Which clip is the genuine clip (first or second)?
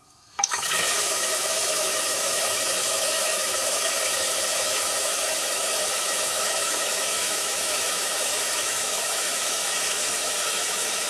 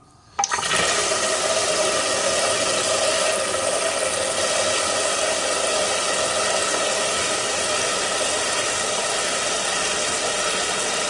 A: second